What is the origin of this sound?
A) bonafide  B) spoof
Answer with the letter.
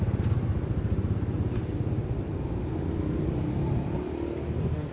A